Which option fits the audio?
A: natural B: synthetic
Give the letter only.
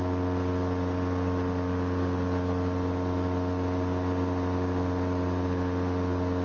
A